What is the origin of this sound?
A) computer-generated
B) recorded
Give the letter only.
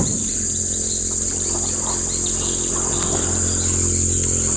B